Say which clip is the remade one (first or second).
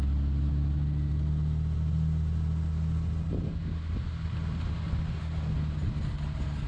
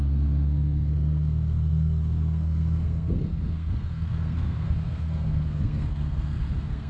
second